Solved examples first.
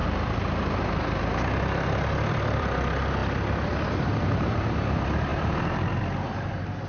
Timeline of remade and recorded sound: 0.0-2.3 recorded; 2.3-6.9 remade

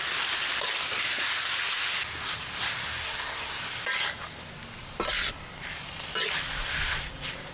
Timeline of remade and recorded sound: 0.0-3.0 recorded; 3.0-3.6 remade; 3.6-7.5 recorded

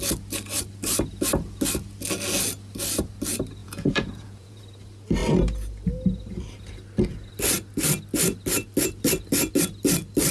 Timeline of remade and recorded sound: 0.0-3.6 recorded; 3.6-4.6 remade; 4.6-10.3 recorded

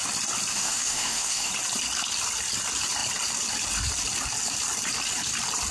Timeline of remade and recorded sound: 0.0-0.5 recorded; 0.5-1.5 remade; 1.5-5.7 recorded